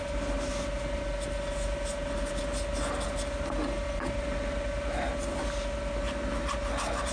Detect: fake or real real